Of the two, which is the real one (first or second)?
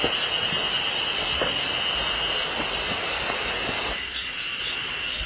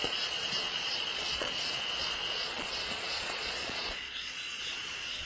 first